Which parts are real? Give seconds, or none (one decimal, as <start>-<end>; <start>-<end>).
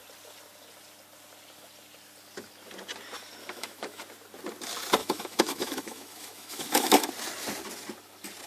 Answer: 0.0-3.4; 4.0-5.0; 7.1-8.5